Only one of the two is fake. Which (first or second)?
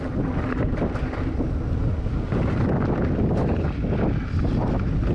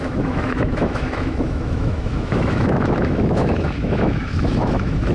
second